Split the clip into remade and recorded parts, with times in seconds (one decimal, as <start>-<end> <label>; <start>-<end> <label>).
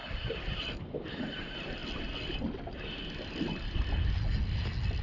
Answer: 0.0-5.0 recorded